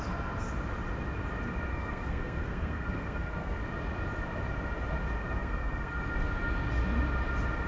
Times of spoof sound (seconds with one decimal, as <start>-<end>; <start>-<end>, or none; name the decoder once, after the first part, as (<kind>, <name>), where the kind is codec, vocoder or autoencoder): 1.7-3.6 (codec, SNAC); 5.4-6.0